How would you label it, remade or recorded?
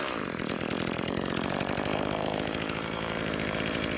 remade